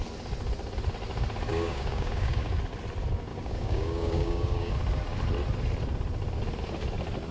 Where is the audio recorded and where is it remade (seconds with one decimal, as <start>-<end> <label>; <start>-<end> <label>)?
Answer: 0.0-1.5 recorded; 1.5-2.6 remade; 2.6-3.3 recorded; 3.3-4.7 remade; 4.7-7.3 recorded